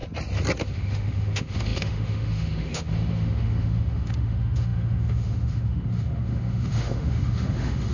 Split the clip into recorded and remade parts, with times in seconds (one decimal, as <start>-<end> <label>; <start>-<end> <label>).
0.0-0.6 recorded; 0.6-7.9 remade